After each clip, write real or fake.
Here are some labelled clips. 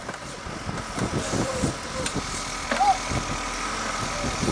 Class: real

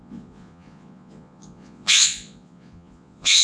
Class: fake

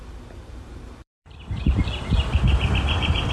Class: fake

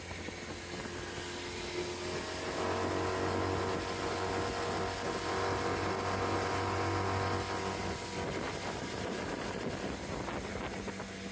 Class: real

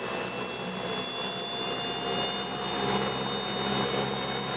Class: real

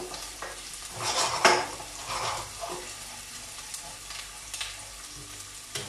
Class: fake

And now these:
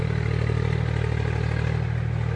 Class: real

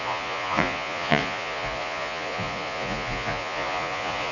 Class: fake